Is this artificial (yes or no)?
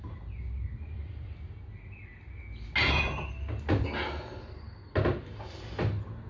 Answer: no